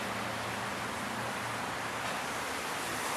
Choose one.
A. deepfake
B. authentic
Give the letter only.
B